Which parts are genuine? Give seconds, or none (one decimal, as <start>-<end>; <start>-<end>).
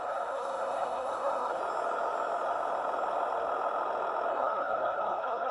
1.6-4.3